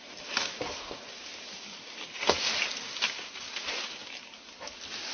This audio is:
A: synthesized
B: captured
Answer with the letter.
B